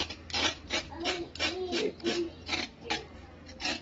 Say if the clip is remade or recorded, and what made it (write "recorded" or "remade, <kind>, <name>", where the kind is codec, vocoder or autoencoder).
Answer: recorded